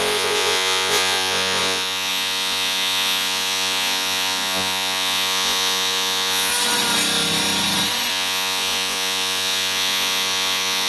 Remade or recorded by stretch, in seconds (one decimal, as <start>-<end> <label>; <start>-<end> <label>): 0.0-6.5 remade; 6.5-8.1 recorded; 8.1-10.9 remade